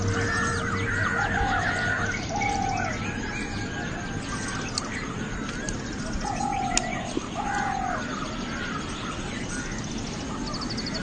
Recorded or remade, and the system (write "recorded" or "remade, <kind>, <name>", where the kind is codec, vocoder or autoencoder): recorded